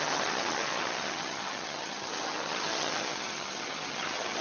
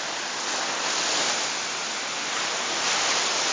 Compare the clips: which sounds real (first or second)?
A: second